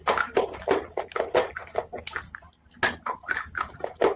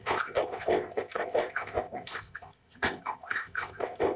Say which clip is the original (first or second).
first